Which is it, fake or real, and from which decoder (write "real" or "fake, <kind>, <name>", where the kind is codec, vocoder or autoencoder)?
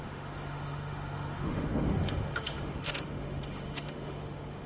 fake, autoencoder, DAC-VAE